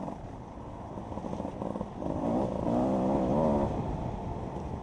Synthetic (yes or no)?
no